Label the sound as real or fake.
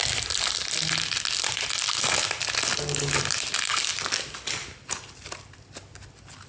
real